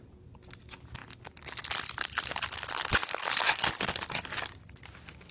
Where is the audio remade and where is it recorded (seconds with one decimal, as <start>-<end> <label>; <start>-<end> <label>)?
0.0-5.3 recorded